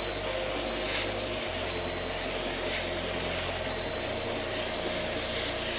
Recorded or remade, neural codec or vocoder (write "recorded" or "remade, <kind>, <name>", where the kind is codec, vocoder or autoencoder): recorded